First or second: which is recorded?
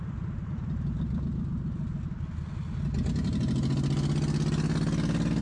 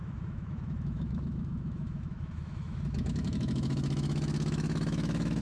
first